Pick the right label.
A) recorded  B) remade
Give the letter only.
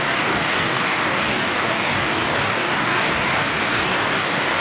B